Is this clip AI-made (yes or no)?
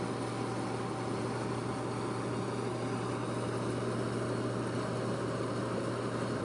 no